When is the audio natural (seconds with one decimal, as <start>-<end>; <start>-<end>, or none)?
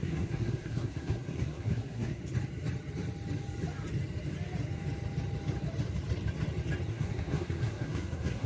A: 2.2-6.9